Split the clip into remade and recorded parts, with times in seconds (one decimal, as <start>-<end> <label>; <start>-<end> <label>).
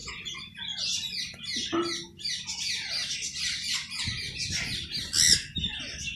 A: 0.0-6.2 recorded